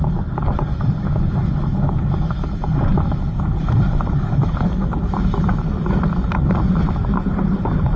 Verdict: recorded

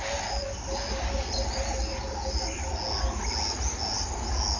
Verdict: recorded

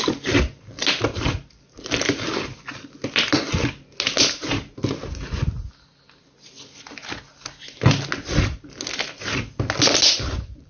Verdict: recorded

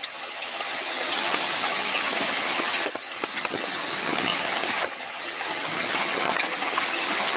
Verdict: remade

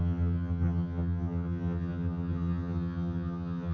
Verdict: remade